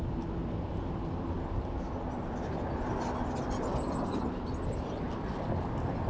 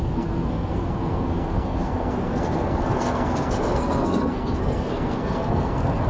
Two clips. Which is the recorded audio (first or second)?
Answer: first